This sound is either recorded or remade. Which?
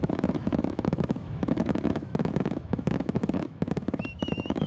remade